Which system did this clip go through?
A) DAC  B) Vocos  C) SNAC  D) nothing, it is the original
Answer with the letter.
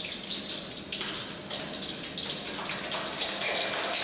D